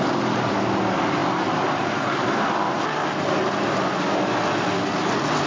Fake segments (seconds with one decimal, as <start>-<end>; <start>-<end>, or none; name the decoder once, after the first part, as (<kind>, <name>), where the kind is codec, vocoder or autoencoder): none